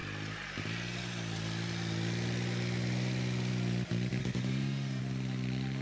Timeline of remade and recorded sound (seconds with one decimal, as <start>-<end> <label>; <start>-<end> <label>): 0.0-4.2 recorded; 4.2-5.0 remade; 5.0-5.8 recorded